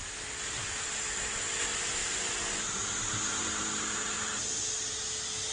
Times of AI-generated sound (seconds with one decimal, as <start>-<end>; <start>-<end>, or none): 2.0-2.7